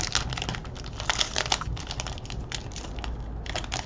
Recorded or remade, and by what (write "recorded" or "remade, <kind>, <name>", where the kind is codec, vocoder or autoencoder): recorded